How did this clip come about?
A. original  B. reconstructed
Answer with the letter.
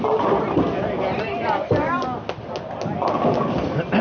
A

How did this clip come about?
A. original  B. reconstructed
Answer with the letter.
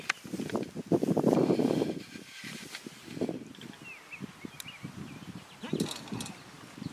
A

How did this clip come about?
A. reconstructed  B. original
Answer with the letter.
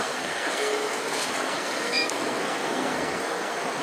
A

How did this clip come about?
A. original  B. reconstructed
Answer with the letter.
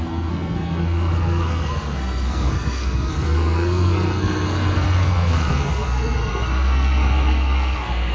B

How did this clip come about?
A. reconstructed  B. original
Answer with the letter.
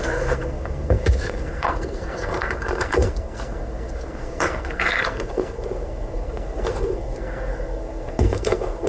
A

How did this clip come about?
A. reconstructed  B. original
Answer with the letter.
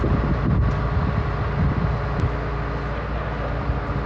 B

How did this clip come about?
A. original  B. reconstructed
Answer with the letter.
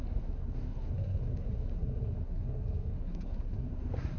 B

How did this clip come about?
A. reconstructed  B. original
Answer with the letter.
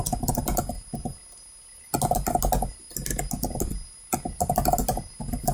B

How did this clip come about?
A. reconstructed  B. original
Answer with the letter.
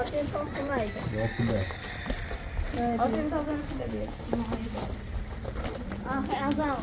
B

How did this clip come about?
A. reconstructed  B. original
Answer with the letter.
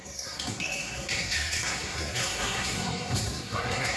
A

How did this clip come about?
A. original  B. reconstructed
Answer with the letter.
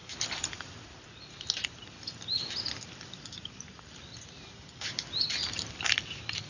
A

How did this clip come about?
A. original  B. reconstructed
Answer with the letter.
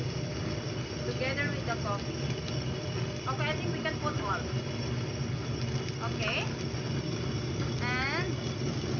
A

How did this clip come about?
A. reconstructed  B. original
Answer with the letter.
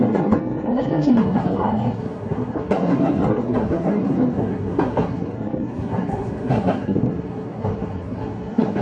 A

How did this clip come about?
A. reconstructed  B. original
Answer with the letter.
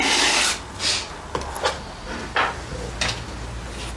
B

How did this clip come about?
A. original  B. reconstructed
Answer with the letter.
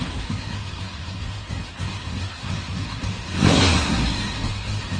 B